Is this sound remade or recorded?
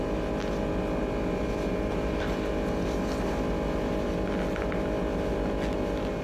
recorded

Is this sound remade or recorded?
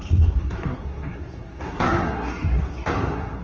remade